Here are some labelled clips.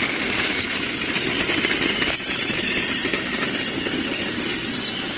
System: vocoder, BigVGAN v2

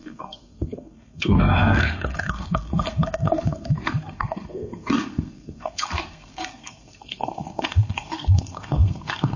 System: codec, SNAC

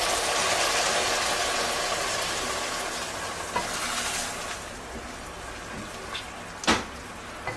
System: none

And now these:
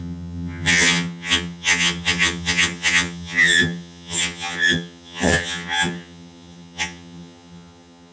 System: vocoder, HiFi-GAN